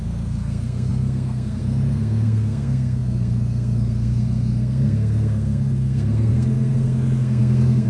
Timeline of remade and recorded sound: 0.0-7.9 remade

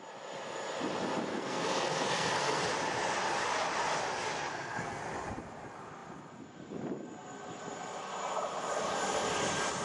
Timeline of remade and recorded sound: 0.0-1.3 recorded; 1.3-2.6 remade; 2.6-4.5 recorded; 4.5-5.0 remade; 5.0-9.8 recorded

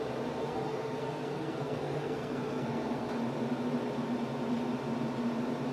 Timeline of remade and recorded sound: 0.0-0.4 recorded; 0.4-3.1 remade; 3.1-5.7 recorded

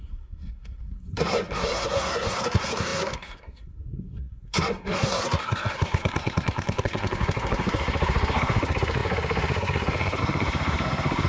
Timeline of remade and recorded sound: 0.0-11.3 remade

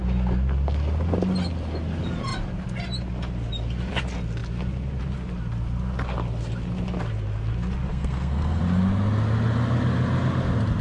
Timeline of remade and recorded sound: 0.0-7.9 recorded; 7.9-8.6 remade; 8.6-10.8 recorded

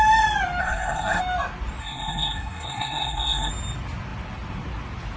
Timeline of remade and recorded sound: 0.0-0.6 recorded; 0.6-1.2 remade; 1.2-1.8 recorded; 1.8-3.5 remade; 3.5-5.2 recorded

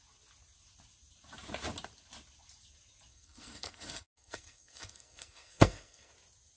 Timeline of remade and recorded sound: 0.0-3.1 recorded; 3.1-6.1 remade; 6.1-6.6 recorded